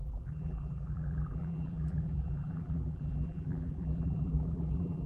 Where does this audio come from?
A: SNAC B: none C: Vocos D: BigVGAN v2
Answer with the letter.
D